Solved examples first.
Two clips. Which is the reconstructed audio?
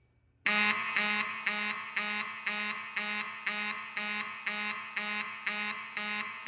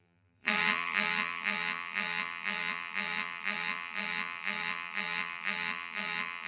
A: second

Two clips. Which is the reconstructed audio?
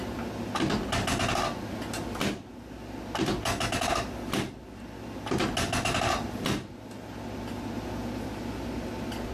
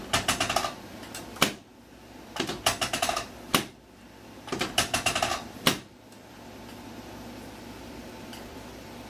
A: second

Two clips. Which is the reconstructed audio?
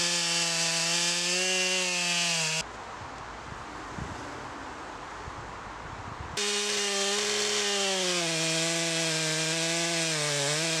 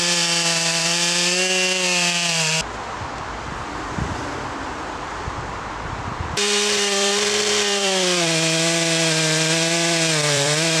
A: second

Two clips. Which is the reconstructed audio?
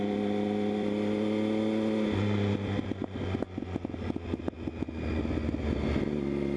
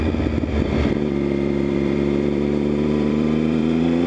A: second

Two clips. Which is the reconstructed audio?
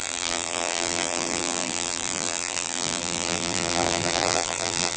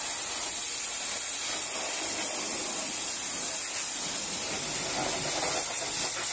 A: first